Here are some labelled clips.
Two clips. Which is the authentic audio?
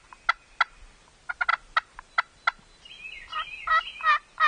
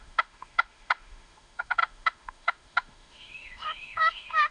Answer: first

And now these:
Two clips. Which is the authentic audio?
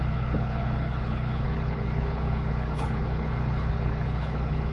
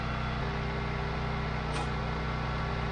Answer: second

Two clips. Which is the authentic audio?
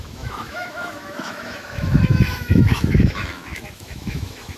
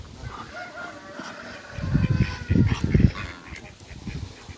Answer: second